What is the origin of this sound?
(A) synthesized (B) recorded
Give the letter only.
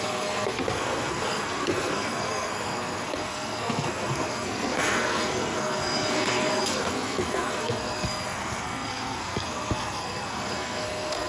A